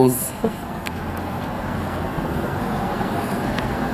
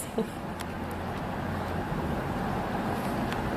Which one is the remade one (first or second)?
first